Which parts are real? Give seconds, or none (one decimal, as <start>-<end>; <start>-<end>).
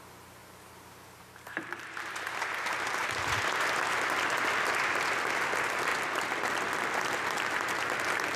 0.0-0.4; 2.1-8.4